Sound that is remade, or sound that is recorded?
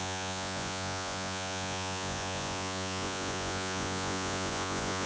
remade